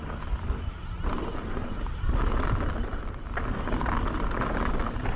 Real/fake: real